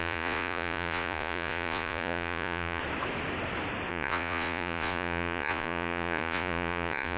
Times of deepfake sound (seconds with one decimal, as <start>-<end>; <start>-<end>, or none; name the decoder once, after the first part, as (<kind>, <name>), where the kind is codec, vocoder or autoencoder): 0.0-2.8 (vocoder, Vocos); 3.9-7.2